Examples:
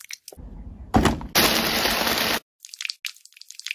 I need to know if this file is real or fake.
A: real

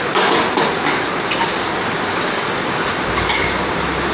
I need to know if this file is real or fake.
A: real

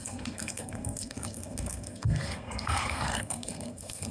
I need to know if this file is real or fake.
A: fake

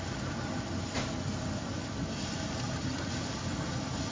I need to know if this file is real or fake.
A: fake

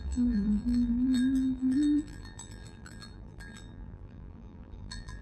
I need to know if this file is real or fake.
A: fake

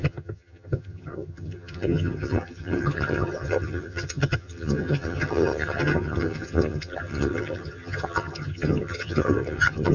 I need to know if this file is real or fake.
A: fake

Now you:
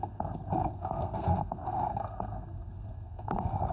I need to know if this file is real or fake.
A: fake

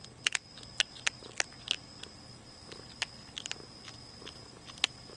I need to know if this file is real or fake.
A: real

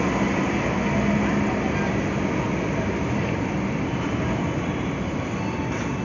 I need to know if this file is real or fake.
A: real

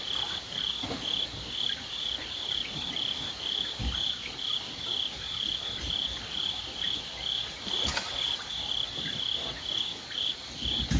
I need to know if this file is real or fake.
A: real